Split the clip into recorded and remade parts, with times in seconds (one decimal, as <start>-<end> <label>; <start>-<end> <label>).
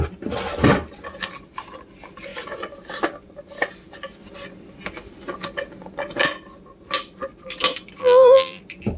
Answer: 0.0-8.0 recorded; 8.0-8.6 remade; 8.6-9.0 recorded